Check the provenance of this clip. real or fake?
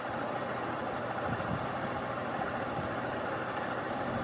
real